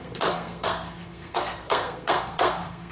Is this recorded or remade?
remade